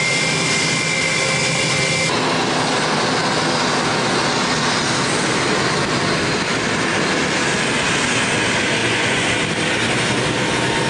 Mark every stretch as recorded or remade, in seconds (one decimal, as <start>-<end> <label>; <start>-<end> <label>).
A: 0.0-8.8 recorded; 8.8-9.3 remade; 9.3-10.9 recorded